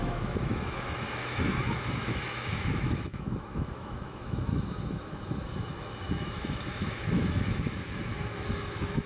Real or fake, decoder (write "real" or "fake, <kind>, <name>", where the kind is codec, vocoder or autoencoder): fake, autoencoder, DAC-VAE